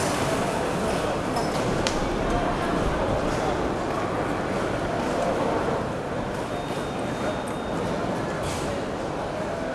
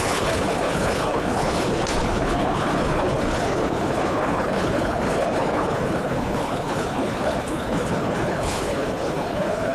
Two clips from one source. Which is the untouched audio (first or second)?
first